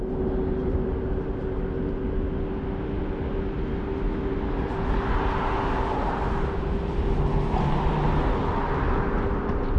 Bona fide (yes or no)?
yes